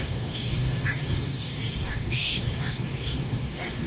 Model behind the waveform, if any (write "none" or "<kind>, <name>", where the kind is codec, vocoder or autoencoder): codec, DAC